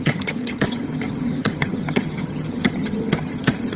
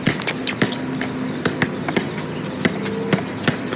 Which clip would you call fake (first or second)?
first